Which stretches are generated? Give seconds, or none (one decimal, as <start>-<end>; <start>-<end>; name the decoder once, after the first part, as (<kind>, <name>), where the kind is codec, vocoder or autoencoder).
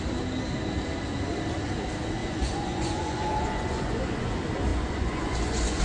2.2-4.3 (vocoder, Vocos); 4.7-5.8